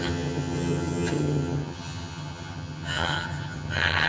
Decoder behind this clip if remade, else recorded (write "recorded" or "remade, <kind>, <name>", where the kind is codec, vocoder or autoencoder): remade, vocoder, HiFi-GAN